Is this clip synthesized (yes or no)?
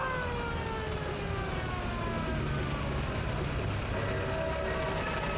no